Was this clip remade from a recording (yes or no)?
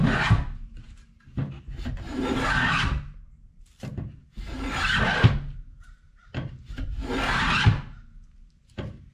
no